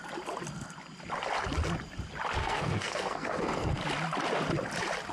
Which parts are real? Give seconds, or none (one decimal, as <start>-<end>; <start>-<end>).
0.0-2.4; 3.7-5.1